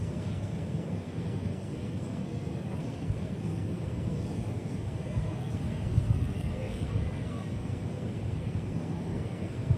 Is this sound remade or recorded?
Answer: remade